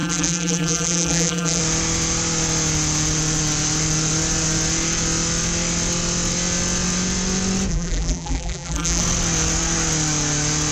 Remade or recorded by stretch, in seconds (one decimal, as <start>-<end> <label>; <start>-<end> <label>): 0.0-1.6 remade; 1.6-7.7 recorded; 7.7-9.0 remade; 9.0-10.7 recorded